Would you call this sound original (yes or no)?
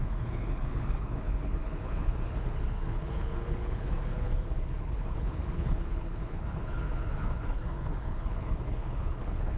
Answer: no